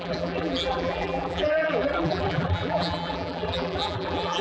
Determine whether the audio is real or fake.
fake